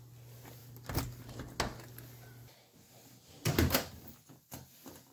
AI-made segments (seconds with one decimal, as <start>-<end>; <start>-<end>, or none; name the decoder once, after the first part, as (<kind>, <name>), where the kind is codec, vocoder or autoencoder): none